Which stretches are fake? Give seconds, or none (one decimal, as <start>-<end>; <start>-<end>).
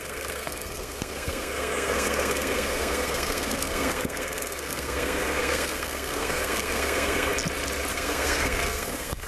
0.0-7.3; 7.9-9.3